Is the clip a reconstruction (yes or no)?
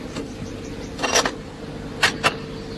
no